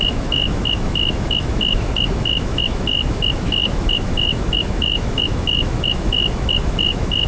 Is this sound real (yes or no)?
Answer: no